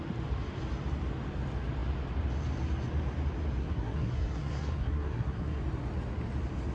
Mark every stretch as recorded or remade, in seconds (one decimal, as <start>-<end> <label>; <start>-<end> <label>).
0.0-3.6 recorded; 3.6-5.6 remade; 5.6-6.7 recorded